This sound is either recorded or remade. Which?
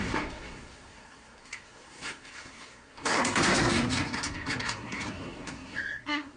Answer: remade